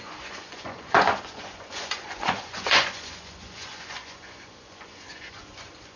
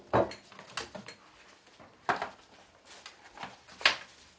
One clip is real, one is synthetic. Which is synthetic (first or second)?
first